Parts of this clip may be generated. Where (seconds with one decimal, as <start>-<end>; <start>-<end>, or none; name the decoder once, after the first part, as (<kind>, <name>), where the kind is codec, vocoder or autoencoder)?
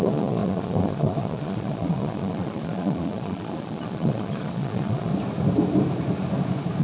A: 0.0-5.1 (vocoder, Vocos)